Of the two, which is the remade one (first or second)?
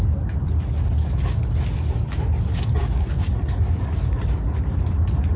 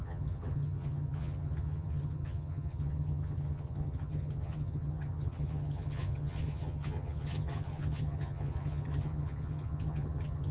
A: second